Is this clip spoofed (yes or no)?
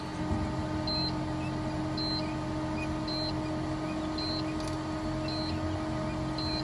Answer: no